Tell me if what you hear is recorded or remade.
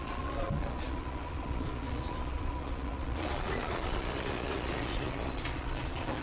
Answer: remade